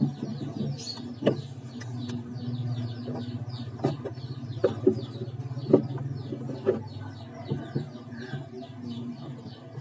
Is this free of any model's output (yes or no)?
yes